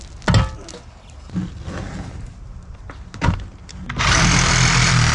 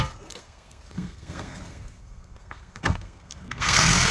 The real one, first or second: first